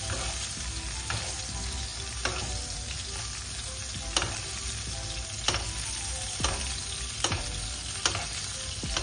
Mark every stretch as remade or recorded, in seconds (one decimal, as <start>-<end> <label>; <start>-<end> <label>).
0.0-9.0 recorded